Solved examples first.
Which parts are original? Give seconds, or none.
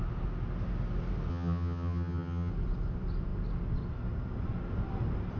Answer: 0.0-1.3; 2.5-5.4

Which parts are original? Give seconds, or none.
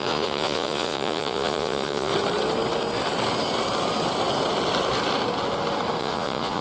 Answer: 2.1-6.0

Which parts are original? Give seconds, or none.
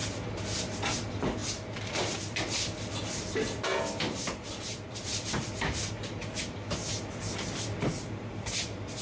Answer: 0.6-3.7; 5.9-9.0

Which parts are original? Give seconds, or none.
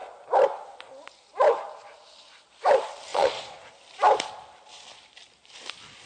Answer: 0.0-3.1; 3.7-6.1